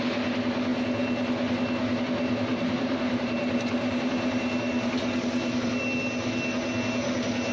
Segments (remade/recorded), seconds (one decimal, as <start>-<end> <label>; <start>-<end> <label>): 0.0-2.5 recorded; 2.5-5.7 remade; 5.7-7.5 recorded